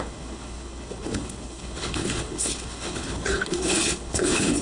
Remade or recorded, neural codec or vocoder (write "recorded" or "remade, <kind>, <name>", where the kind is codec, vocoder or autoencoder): remade, codec, HILCodec